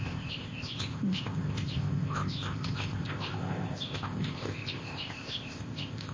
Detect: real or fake fake